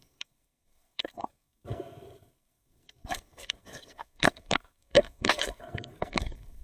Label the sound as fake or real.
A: fake